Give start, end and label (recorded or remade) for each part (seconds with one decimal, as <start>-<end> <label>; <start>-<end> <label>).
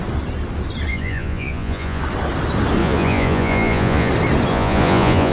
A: 0.0-0.9 recorded; 0.9-2.0 remade; 2.0-2.8 recorded; 2.8-4.1 remade; 4.1-4.5 recorded; 4.5-5.3 remade